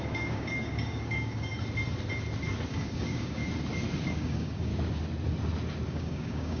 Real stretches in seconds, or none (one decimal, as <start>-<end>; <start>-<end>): 1.5-2.7; 3.4-4.1; 4.7-5.9